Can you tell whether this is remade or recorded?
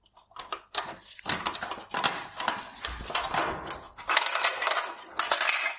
recorded